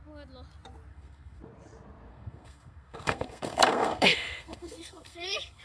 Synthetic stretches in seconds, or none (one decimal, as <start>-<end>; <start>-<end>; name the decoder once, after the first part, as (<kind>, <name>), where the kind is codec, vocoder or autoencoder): 0.9-1.4 (codec, SNAC); 2.1-5.6